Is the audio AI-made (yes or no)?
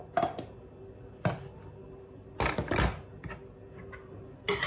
no